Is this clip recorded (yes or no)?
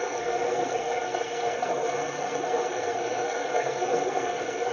no